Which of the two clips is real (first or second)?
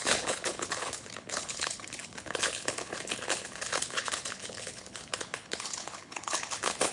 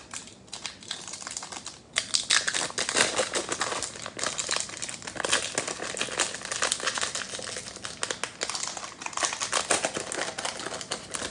second